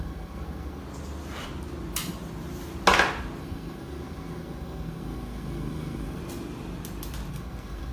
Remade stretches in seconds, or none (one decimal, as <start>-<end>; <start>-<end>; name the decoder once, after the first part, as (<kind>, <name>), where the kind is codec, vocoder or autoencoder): 0.0-0.8 (codec, SNAC); 3.4-6.2; 7.3-7.9